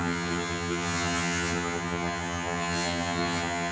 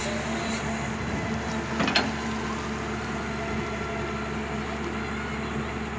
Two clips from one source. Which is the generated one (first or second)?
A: first